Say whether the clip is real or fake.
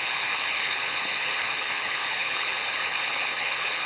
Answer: fake